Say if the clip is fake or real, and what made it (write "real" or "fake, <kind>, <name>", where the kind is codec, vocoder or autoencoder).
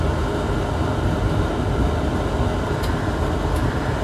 real